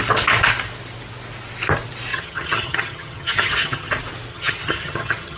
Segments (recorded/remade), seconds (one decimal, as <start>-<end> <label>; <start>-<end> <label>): 0.0-2.1 recorded; 2.1-3.9 remade; 3.9-4.3 recorded; 4.3-5.4 remade